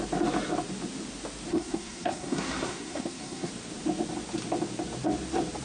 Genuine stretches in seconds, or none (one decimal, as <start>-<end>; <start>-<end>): 0.0-1.5; 3.5-5.6